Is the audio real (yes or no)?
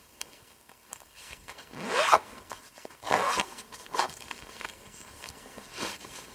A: no